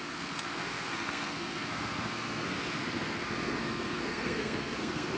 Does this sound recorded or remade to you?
remade